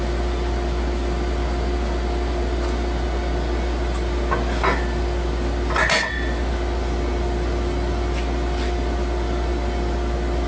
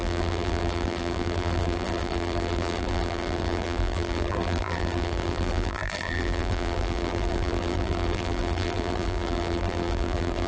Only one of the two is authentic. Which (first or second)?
first